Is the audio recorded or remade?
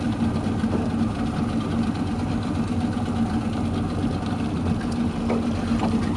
recorded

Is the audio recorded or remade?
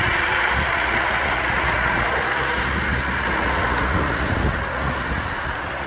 remade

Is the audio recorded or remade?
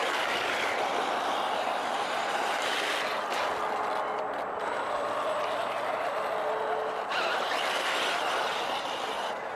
recorded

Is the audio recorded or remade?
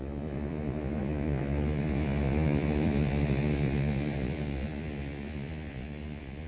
remade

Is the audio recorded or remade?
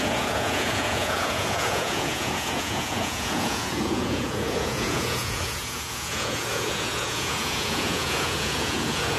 remade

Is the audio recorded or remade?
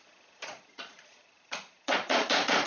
remade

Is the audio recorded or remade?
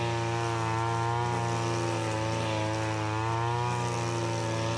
recorded